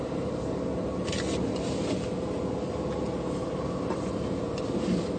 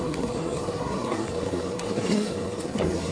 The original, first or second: first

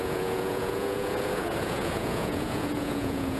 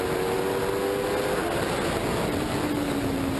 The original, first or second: second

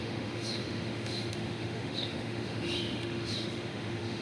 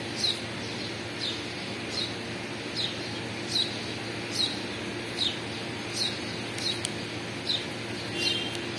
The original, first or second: second